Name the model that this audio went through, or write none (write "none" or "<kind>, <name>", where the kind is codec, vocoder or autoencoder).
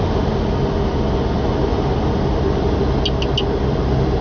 none